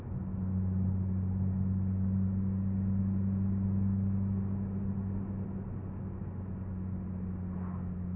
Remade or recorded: recorded